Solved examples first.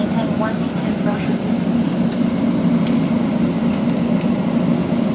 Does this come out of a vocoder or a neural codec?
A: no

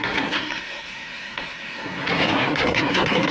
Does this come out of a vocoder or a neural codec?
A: yes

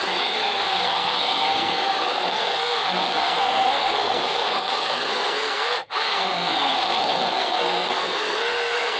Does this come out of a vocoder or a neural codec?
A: yes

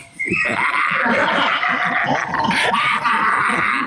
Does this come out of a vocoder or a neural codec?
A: no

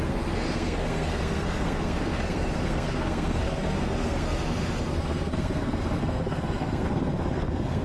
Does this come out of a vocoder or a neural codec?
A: yes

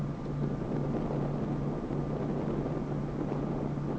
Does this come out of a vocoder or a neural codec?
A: no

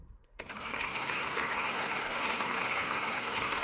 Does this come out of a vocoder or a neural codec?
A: yes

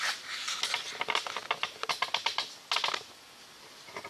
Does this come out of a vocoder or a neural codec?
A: no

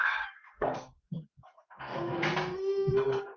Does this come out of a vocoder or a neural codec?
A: yes